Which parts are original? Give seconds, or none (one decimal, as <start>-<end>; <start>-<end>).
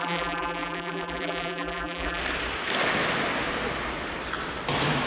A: 2.2-5.1